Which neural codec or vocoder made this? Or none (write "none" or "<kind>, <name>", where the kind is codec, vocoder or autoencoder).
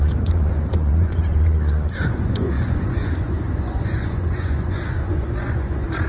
vocoder, Vocos